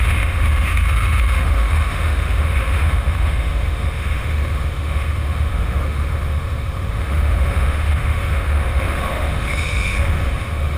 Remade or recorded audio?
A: remade